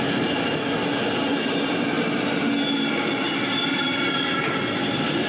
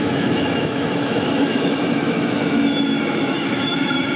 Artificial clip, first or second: second